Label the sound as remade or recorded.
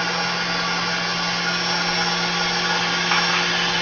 recorded